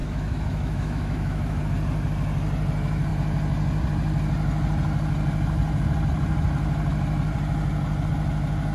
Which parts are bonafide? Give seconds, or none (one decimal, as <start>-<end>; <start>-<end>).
1.6-8.7